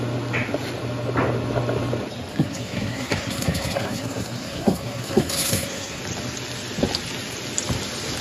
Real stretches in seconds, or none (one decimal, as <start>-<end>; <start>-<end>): 0.0-2.3; 6.0-8.2